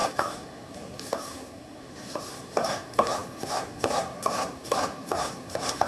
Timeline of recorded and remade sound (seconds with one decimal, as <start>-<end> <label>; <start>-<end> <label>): 0.0-5.9 remade